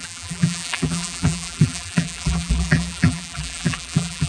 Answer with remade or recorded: remade